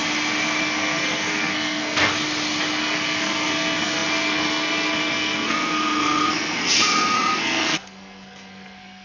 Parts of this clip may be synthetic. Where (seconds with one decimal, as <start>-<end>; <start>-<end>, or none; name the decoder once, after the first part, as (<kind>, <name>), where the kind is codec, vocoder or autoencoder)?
0.6-2.1 (codec, SNAC); 2.8-9.0